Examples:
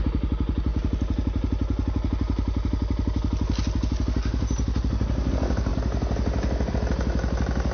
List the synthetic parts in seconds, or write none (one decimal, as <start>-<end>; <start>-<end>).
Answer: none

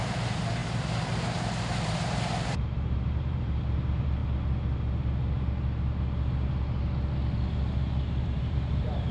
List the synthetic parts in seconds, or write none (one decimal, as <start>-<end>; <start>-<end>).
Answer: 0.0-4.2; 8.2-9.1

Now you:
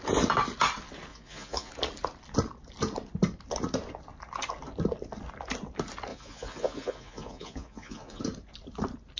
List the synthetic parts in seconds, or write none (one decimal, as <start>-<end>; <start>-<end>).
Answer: 1.1-1.7; 6.1-8.2